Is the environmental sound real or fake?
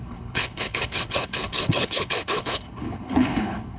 fake